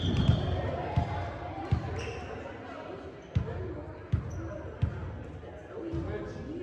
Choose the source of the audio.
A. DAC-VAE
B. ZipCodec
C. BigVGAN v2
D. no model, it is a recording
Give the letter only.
D